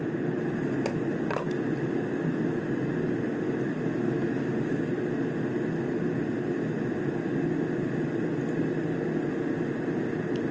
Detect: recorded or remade recorded